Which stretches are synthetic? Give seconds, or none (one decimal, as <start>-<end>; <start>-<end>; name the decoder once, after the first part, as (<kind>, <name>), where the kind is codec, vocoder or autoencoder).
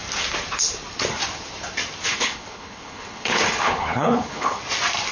2.1-4.6 (codec, HILCodec)